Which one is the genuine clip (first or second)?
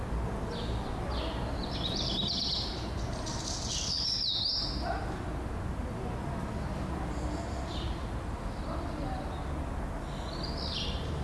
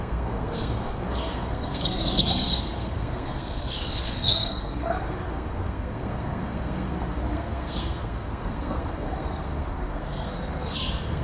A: first